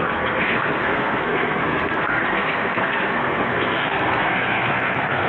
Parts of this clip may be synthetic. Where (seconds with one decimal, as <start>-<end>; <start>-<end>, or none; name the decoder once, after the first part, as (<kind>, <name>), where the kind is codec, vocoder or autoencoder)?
0.0-5.3 (codec, SNAC)